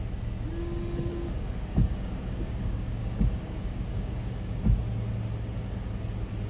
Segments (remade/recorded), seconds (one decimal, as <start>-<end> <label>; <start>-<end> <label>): 0.0-1.1 recorded; 1.1-4.6 remade; 4.6-6.5 recorded